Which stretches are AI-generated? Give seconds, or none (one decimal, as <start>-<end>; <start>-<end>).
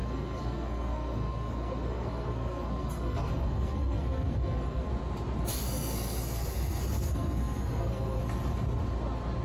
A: 0.0-4.9; 5.5-8.2